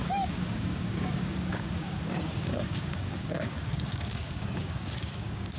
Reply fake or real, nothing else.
fake